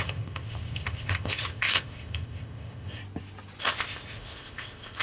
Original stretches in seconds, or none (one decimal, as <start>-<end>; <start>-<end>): 3.0-3.6